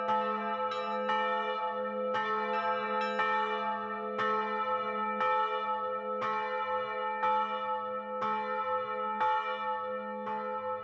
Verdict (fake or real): real